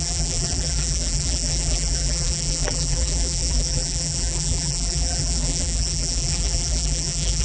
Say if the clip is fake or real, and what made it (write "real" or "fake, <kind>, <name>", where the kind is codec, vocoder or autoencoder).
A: fake, vocoder, BigVGAN v2